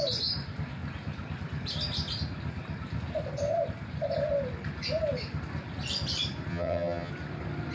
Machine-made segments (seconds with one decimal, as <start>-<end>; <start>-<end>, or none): 6.5-7.1